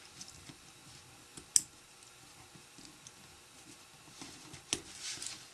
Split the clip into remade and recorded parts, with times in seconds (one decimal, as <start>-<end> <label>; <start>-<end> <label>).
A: 0.0-5.5 recorded